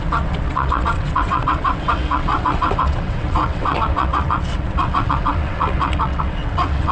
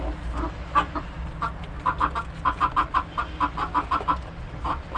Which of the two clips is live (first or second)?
second